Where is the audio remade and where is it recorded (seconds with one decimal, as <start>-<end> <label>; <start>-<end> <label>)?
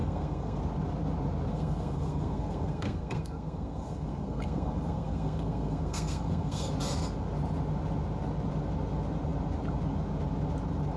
0.0-0.6 remade; 0.6-1.5 recorded; 1.5-6.7 remade; 6.7-11.0 recorded